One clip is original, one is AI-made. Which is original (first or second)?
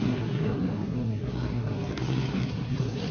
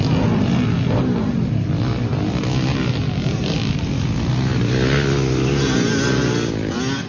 second